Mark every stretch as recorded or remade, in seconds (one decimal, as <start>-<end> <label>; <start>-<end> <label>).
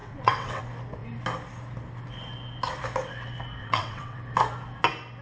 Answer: 0.0-0.6 remade; 0.6-3.6 recorded; 3.6-4.2 remade; 4.2-5.2 recorded